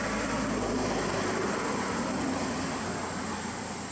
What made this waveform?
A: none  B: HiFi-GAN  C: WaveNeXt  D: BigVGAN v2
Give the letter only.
A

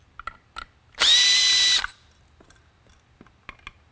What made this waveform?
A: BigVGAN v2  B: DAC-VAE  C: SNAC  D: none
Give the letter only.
D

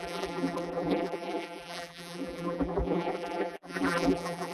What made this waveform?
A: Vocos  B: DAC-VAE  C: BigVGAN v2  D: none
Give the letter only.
C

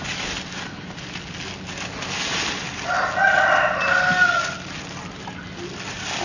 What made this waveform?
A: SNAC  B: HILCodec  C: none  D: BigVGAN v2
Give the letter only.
C